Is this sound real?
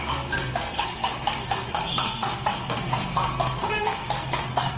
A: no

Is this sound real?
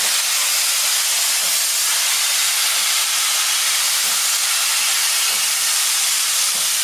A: yes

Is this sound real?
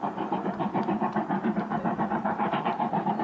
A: no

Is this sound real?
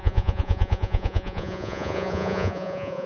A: no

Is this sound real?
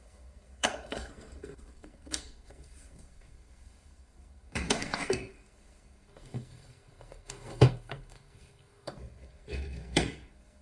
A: no